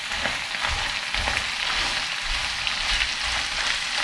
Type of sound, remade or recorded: recorded